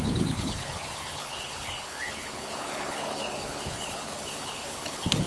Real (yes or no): no